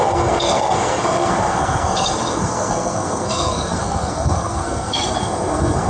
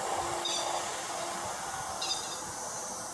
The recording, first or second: second